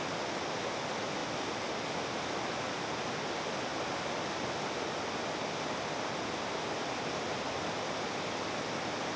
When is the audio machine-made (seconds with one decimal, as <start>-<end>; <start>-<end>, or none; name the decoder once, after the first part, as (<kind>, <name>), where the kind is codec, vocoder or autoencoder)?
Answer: none